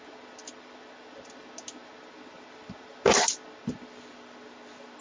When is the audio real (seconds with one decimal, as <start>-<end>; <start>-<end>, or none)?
0.0-5.0